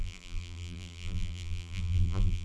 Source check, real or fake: fake